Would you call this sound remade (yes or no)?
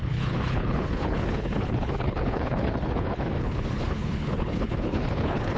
yes